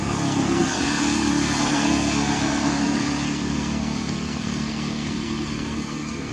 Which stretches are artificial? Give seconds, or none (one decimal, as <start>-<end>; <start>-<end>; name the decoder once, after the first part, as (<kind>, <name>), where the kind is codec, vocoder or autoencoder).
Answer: 0.0-6.3 (codec, SNAC)